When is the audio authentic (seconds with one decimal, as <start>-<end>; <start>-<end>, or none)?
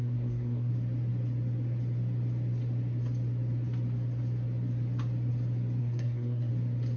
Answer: 0.7-5.8; 6.5-7.0